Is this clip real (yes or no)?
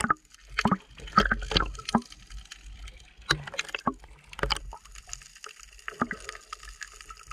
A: yes